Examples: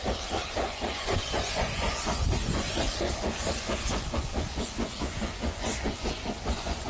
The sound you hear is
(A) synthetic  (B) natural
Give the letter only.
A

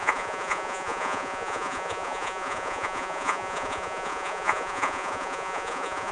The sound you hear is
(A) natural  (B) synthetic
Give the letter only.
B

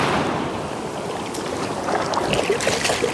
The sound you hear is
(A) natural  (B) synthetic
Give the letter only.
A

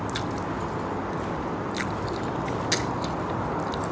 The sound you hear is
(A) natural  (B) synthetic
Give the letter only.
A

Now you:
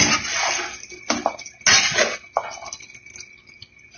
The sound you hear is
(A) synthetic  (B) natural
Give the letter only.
B